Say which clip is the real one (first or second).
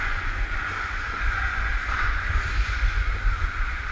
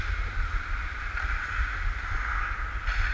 second